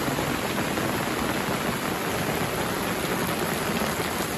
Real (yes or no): yes